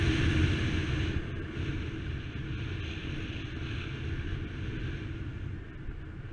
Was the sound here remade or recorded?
recorded